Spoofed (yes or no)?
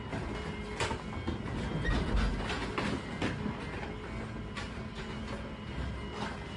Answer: no